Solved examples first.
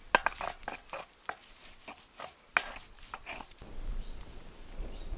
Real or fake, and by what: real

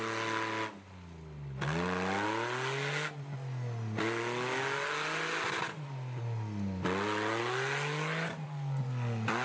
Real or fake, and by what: real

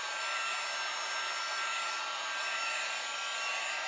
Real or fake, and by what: real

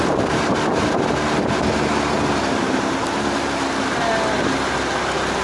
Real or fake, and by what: real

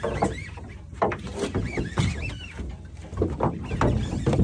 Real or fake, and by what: real